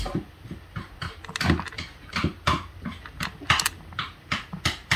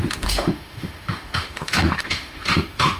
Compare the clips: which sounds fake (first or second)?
second